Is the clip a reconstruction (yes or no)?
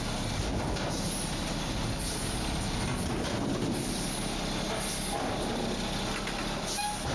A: no